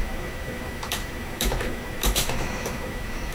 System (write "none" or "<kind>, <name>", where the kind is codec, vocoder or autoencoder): autoencoder, DAC-VAE